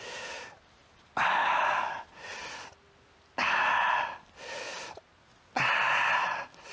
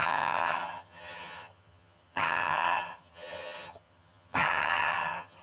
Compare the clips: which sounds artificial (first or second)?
second